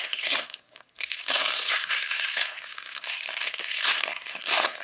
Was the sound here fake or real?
fake